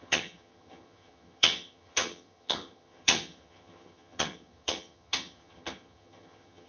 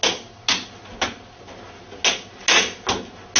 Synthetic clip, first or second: first